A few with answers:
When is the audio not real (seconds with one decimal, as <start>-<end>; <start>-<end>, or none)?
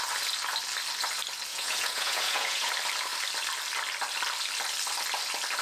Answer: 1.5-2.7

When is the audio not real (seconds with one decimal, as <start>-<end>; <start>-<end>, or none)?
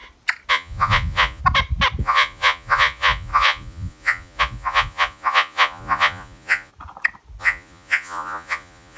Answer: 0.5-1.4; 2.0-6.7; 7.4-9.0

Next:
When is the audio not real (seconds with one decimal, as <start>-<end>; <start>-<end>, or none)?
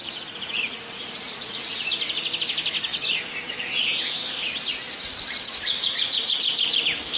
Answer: 0.0-1.9